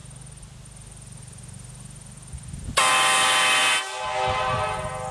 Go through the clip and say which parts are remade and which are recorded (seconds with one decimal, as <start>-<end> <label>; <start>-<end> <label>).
0.0-5.1 recorded